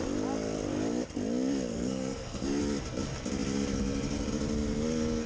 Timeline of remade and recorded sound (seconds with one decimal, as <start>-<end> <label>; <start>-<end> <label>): 0.0-1.7 recorded; 1.7-2.6 remade; 2.6-5.3 recorded